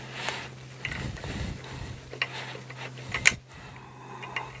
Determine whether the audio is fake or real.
real